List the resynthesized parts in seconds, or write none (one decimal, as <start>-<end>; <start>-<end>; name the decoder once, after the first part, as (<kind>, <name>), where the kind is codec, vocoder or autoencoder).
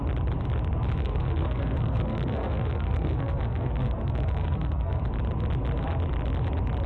1.0-5.0 (codec, SNAC)